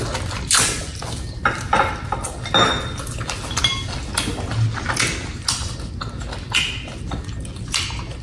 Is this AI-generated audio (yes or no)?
no